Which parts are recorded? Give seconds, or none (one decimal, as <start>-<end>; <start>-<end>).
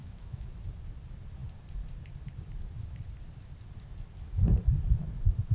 0.5-5.5